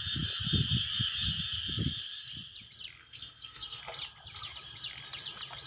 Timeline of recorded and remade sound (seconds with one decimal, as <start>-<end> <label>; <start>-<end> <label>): 0.0-3.0 recorded; 3.0-3.8 remade; 3.8-5.7 recorded

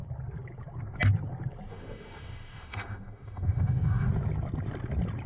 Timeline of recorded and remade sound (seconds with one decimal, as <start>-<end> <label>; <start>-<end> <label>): 0.0-1.7 recorded; 1.7-4.1 remade; 4.1-5.3 recorded